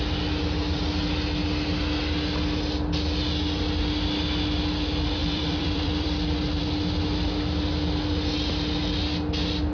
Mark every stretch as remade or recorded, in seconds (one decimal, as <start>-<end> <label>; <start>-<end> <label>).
0.0-5.2 recorded; 5.2-6.6 remade; 6.6-9.7 recorded